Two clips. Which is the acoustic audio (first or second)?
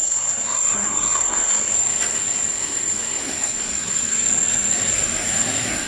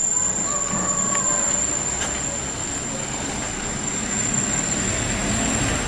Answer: second